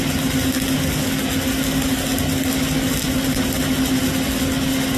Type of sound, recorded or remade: recorded